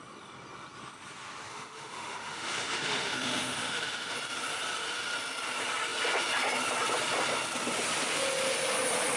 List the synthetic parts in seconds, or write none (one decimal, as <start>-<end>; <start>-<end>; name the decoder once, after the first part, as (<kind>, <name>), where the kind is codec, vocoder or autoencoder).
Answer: 1.5-4.1 (autoencoder, DAC-VAE)